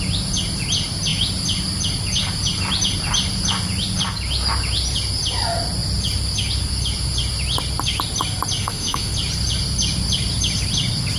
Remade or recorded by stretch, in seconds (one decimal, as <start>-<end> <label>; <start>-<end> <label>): 0.0-8.6 recorded; 8.6-9.1 remade; 9.1-11.2 recorded